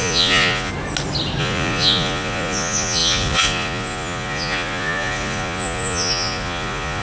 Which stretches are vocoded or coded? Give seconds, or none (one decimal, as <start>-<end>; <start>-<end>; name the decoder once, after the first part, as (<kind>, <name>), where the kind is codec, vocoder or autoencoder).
0.0-0.7 (vocoder, Vocos); 1.4-7.0